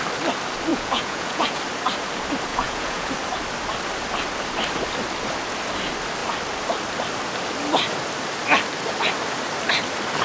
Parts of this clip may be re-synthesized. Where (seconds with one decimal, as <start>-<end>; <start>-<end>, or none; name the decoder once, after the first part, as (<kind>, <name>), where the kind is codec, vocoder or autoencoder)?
0.7-1.6 (vocoder, Vocos); 2.5-3.1